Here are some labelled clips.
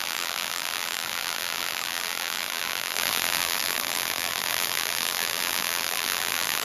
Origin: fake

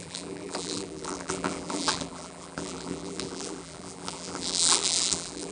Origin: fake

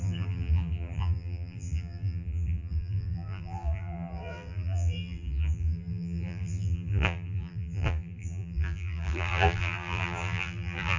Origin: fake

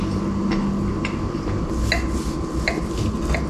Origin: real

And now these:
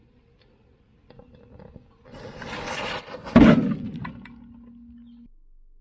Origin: real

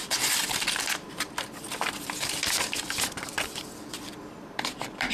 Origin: fake